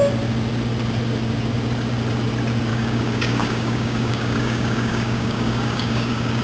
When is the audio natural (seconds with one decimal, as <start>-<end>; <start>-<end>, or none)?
0.0-2.7